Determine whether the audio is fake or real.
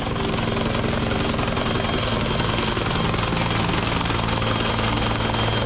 real